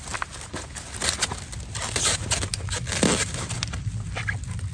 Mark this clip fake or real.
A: real